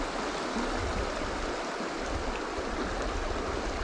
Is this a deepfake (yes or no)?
no